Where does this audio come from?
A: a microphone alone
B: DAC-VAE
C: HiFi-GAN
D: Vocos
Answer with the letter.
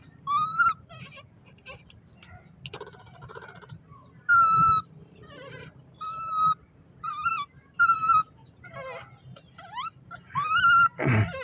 A